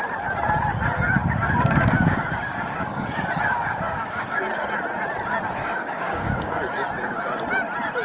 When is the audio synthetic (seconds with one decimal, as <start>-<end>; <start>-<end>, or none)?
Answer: 1.2-4.4; 5.6-6.6